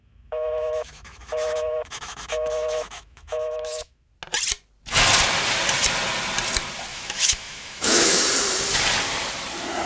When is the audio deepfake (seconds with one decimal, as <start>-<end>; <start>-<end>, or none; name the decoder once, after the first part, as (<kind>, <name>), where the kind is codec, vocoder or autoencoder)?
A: 0.0-4.1 (autoencoder, DAC-VAE); 6.9-8.2